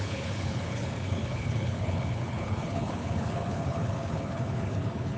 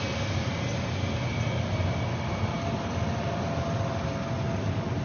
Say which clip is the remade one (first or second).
first